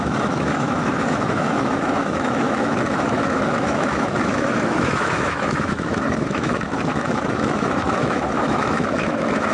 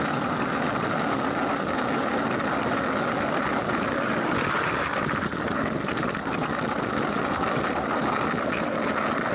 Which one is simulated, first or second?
first